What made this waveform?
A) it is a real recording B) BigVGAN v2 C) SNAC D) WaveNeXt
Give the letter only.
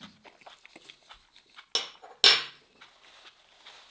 A